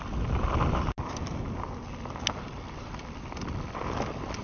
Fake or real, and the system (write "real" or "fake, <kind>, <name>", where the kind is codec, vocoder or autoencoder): real